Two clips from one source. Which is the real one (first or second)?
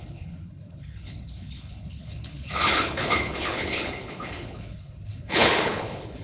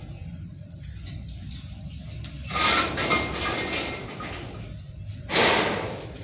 second